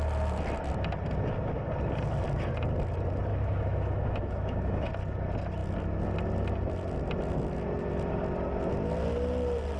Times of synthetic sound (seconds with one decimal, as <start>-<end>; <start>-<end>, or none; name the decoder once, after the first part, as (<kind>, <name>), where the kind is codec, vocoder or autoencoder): 3.3-4.9 (autoencoder, DAC-VAE)